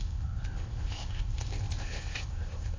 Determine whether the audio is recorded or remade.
remade